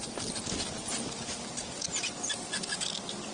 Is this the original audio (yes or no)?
yes